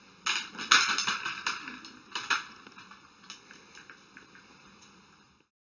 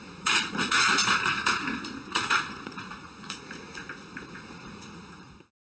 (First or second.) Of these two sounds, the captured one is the first